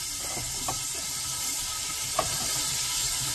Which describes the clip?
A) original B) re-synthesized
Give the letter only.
B